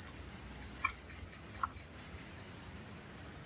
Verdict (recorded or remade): recorded